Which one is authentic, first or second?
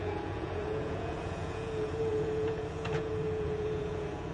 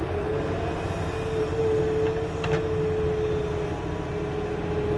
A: second